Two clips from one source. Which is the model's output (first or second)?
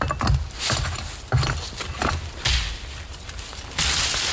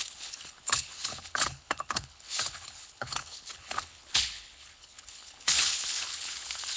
second